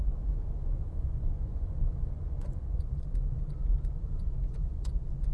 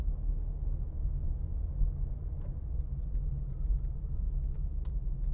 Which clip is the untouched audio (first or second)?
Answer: second